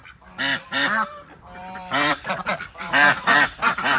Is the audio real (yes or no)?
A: no